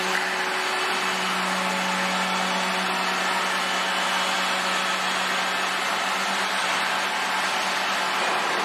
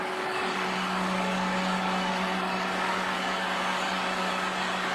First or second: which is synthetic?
second